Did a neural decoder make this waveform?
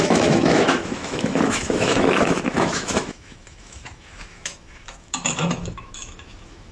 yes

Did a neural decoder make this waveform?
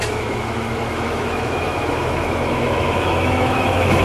yes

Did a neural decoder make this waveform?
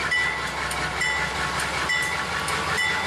no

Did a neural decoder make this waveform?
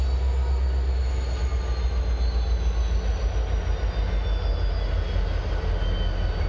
no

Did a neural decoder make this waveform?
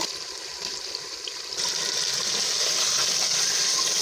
no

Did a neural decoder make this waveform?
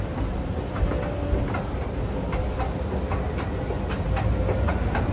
no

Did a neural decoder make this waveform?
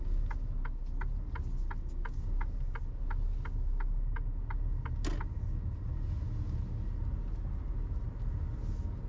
no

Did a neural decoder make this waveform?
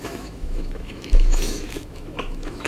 yes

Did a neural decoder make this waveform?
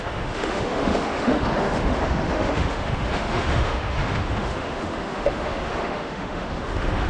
yes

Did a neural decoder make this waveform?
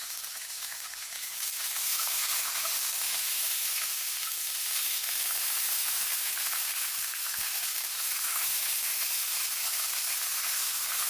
yes